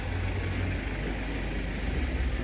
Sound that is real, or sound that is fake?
real